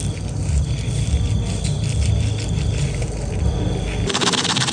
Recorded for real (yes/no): yes